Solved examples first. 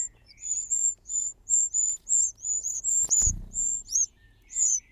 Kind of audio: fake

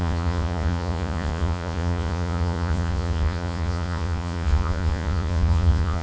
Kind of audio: fake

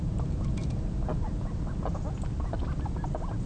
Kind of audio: real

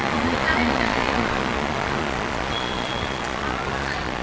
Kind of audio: fake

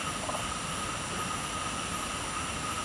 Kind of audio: real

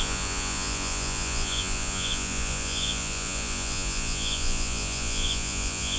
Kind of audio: fake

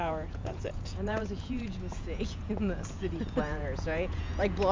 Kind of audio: fake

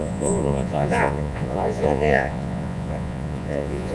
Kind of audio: fake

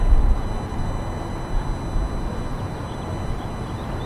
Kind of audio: real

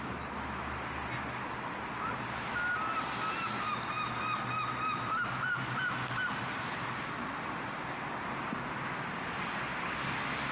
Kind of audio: real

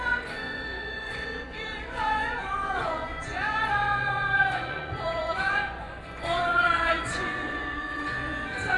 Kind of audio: fake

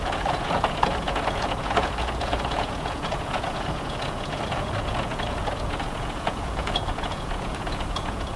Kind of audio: fake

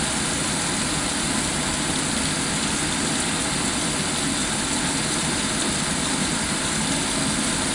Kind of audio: real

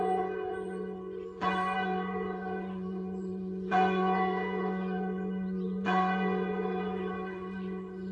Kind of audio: fake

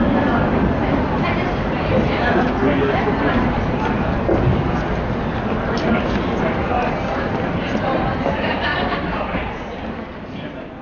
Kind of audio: real